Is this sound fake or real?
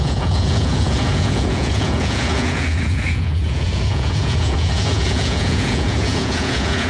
fake